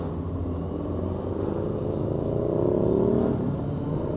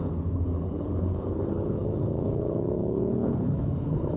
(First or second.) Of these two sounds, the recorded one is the first